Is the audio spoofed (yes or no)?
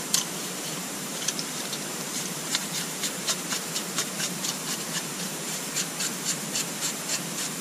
yes